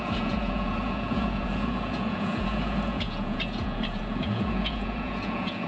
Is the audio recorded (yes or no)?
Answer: no